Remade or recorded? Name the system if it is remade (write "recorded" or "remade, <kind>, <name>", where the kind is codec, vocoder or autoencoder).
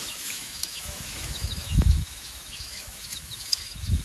remade, autoencoder, DAC-VAE